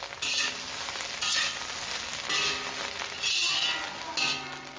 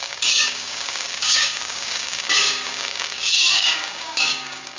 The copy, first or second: second